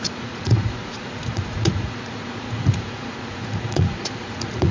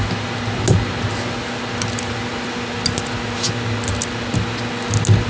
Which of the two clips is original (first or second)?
second